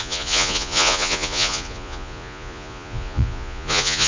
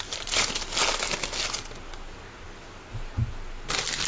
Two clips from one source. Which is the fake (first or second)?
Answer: first